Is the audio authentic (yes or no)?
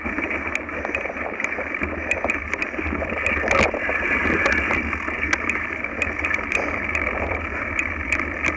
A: yes